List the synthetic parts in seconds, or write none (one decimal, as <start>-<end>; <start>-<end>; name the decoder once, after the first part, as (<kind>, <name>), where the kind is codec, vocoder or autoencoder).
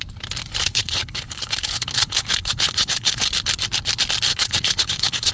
0.6-3.3 (codec, HILCodec); 4.3-5.3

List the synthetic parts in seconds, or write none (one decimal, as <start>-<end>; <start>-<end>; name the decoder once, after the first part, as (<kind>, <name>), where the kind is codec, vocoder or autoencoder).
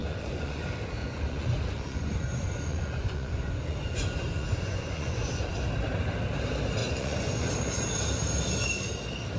0.0-0.6 (vocoder, Vocos); 1.0-5.5; 6.8-7.5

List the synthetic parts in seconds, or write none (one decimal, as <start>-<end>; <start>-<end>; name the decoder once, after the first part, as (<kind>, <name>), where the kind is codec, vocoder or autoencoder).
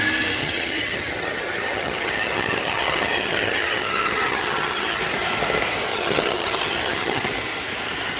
0.4-5.0 (vocoder, HiFi-GAN); 5.9-7.3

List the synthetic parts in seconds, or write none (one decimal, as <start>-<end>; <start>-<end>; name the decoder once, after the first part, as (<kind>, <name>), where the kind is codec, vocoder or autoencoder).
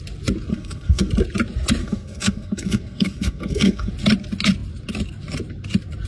0.5-1.1 (codec, SNAC); 1.8-3.9